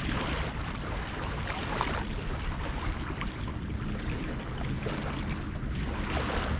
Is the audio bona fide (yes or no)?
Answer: yes